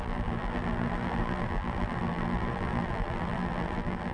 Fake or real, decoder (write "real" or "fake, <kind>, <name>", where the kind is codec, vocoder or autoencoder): fake, vocoder, BigVGAN v2